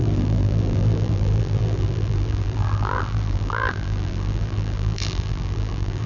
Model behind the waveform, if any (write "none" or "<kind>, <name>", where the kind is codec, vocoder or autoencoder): vocoder, BigVGAN v2